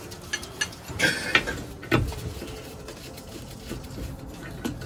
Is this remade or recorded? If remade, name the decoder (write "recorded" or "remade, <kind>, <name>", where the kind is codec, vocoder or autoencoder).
recorded